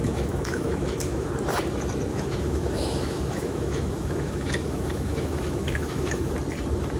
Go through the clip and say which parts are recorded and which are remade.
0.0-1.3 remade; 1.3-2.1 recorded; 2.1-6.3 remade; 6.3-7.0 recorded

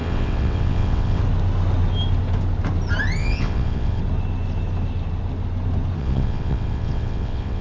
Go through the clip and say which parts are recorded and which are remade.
0.0-1.2 remade; 1.2-3.2 recorded; 3.2-4.0 remade; 4.0-6.0 recorded; 6.0-7.6 remade